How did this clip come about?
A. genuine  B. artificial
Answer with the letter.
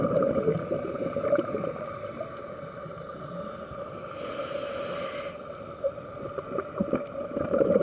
A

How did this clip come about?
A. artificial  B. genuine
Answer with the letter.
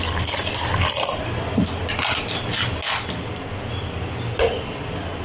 B